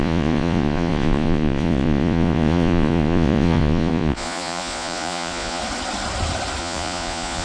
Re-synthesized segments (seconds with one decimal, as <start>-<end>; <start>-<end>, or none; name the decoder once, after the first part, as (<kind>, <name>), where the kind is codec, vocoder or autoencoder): 0.0-5.6 (vocoder, Vocos); 6.6-7.4